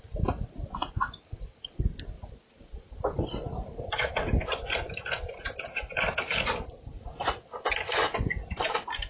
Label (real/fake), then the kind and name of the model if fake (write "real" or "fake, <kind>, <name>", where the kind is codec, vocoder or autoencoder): fake, vocoder, BigVGAN v2